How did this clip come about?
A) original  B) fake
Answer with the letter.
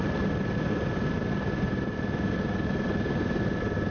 A